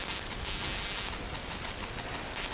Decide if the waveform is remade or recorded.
recorded